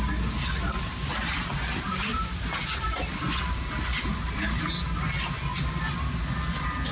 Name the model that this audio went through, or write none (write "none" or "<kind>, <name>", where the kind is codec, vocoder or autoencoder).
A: none